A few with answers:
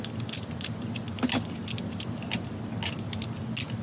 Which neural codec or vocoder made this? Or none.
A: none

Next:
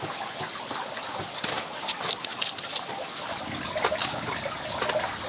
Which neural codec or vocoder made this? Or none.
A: none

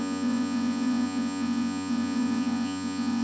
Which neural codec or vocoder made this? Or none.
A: vocoder, Vocos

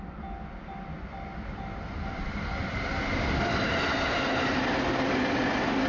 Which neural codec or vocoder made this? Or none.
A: none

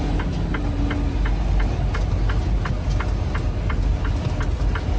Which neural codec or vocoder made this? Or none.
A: none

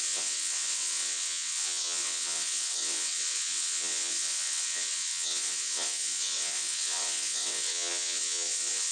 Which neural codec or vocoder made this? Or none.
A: vocoder, WaveNeXt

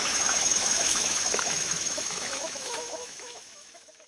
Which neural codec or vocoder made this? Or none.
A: autoencoder, DAC-VAE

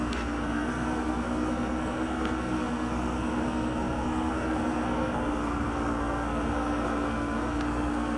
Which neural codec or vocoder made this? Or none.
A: codec, SNAC